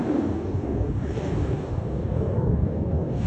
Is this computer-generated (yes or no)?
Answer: yes